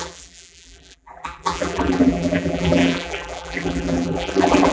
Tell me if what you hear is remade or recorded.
remade